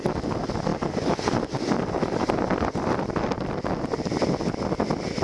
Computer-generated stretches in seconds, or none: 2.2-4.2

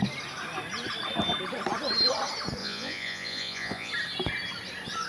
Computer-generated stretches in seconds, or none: 2.6-3.9

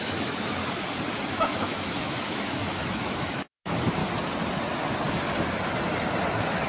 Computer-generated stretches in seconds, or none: 0.0-0.6; 1.3-4.0

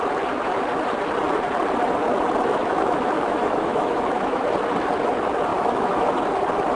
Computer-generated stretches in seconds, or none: 2.6-4.4; 5.5-6.1